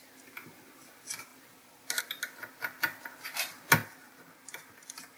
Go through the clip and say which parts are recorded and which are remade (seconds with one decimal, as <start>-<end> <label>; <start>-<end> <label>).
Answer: 0.0-5.2 recorded